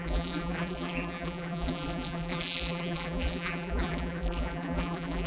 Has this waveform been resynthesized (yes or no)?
yes